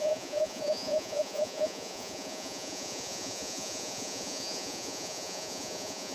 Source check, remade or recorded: remade